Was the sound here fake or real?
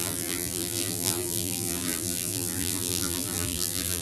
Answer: fake